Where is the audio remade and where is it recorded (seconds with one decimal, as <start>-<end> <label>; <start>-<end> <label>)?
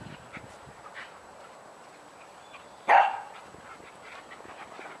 0.0-1.7 remade; 1.7-5.0 recorded